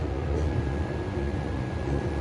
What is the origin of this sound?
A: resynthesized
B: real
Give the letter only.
A